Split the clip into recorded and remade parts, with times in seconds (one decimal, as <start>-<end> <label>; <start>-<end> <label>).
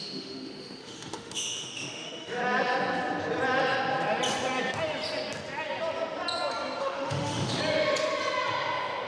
0.0-2.4 remade; 2.4-6.8 recorded; 6.8-7.6 remade; 7.6-9.1 recorded